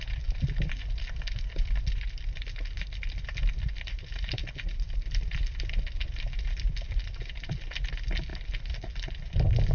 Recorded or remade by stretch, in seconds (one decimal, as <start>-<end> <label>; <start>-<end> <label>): 0.0-9.7 recorded